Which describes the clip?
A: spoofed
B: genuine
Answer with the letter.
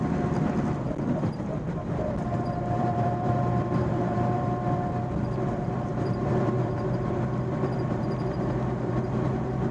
A